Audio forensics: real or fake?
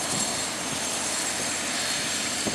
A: fake